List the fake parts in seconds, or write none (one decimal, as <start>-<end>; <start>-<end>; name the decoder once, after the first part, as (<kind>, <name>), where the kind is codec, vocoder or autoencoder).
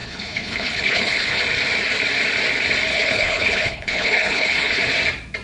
0.0-1.4 (codec, HILCodec); 2.9-4.8